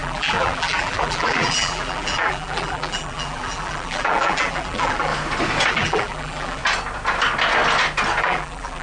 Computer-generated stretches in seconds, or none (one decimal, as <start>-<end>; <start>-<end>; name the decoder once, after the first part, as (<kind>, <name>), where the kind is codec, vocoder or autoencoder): 0.0-5.1 (vocoder, BigVGAN v2); 5.7-6.6; 8.2-8.8

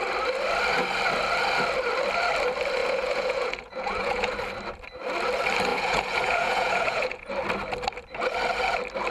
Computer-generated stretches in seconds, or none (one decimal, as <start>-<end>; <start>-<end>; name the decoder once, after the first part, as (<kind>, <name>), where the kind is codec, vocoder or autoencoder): 2.8-4.3 (vocoder, Vocos); 5.7-7.3

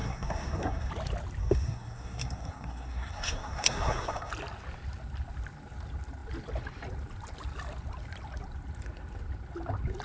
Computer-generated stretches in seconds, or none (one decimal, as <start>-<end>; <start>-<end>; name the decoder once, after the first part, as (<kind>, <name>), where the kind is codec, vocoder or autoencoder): 0.0-0.9 (codec, SNAC); 1.4-4.3

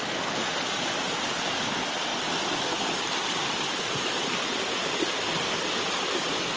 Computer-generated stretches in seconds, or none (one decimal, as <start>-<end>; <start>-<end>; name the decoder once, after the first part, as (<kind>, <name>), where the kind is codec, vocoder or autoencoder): 0.4-1.7 (vocoder, BigVGAN v2); 3.4-5.2

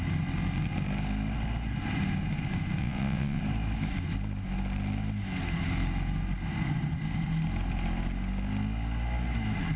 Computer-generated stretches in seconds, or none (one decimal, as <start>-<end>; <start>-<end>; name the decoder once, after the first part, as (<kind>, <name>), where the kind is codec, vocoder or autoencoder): 2.8-3.4 (vocoder, WaveNeXt)

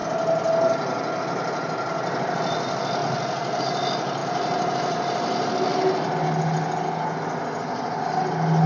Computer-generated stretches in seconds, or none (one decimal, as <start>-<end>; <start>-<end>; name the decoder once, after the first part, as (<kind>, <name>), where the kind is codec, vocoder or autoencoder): none

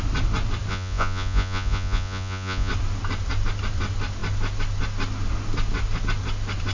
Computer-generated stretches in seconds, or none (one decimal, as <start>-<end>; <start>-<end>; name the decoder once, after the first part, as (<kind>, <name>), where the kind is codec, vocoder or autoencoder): 0.7-2.7 (vocoder, Vocos)

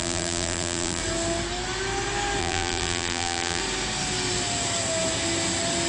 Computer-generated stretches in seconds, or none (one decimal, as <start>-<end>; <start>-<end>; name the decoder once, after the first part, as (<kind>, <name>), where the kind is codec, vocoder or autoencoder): 0.0-1.0 (vocoder, BigVGAN v2); 2.4-3.6